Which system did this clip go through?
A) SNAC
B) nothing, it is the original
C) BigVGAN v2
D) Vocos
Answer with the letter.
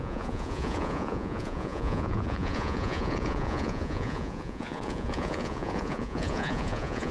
D